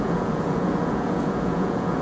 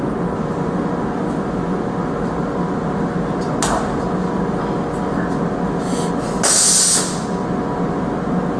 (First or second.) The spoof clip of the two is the first